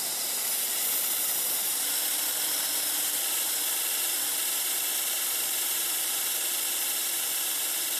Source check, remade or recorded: recorded